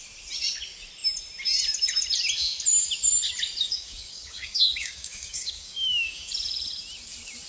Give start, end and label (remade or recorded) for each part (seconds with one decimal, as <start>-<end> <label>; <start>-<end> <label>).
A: 0.0-3.7 recorded; 3.7-6.3 remade; 6.3-7.5 recorded